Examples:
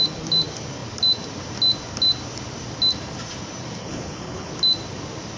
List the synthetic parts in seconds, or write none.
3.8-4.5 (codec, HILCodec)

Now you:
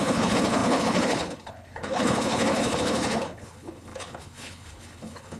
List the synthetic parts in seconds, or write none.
0.0-5.4 (codec, HILCodec)

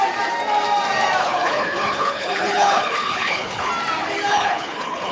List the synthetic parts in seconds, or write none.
1.2-3.7 (codec, HILCodec); 4.3-5.1

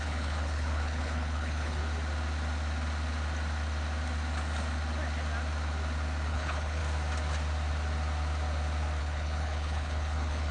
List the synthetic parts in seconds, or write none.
0.0-1.8 (codec, HILCodec); 6.3-6.8; 9.0-10.5